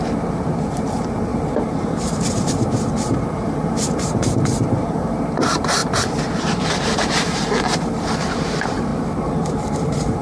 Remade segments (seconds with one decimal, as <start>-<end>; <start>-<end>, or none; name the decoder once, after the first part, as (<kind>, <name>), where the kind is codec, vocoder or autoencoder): 0.0-8.9 (vocoder, BigVGAN v2); 9.5-10.2